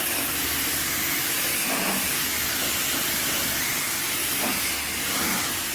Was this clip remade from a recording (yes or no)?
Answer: no